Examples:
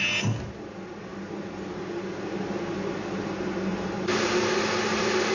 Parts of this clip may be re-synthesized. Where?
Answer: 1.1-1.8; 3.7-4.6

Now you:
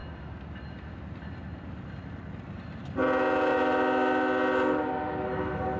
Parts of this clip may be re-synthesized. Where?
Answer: none